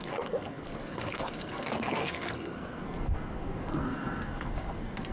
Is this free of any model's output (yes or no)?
no